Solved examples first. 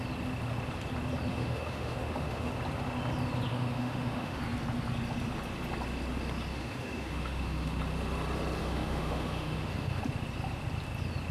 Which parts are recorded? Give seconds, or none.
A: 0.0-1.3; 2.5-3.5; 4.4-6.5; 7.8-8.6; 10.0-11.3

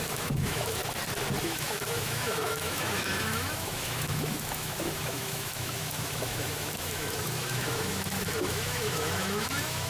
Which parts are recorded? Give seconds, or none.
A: 0.8-1.4

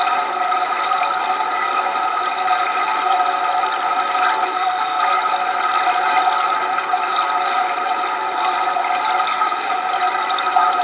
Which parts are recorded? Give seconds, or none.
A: 0.0-4.4; 5.0-9.3; 9.9-10.8

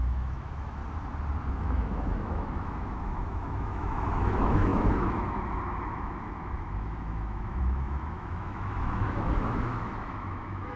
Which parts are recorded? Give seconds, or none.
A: 0.8-1.5

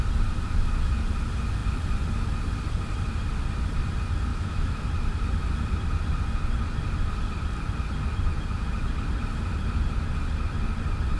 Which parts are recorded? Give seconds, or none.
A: 0.0-4.3; 4.9-11.2